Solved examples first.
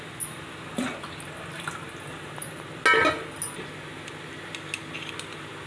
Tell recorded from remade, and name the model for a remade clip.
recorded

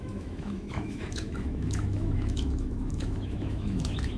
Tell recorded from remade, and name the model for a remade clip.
remade, autoencoder, DAC-VAE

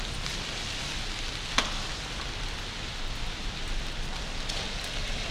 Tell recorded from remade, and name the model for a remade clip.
recorded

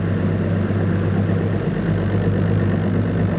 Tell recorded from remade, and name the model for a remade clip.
recorded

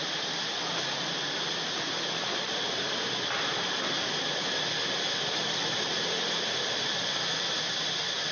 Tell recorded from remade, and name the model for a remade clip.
recorded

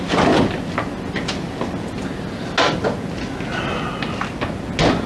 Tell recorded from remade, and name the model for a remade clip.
recorded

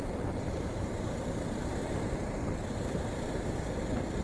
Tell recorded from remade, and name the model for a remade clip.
remade, vocoder, BigVGAN v2